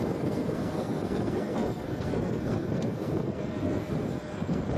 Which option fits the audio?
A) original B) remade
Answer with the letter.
B